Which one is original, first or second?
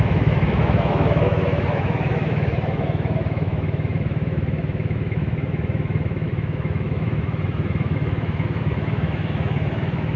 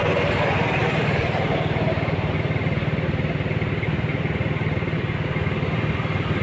second